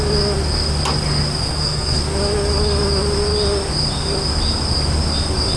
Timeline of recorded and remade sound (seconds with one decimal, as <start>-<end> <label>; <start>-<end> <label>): 0.0-1.4 recorded; 1.4-2.0 remade; 2.0-5.6 recorded